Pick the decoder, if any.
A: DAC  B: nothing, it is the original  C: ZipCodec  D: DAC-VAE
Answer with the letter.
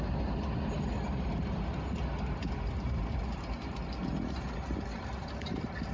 B